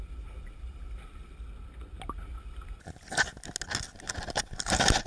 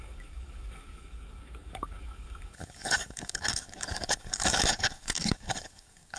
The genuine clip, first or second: first